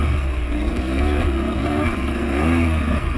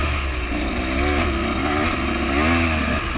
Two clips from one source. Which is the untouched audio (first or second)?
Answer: second